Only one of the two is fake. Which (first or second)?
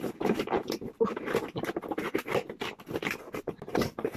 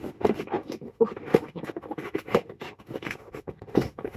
second